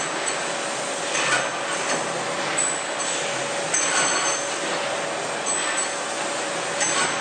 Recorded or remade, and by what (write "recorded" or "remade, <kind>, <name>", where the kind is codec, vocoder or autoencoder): recorded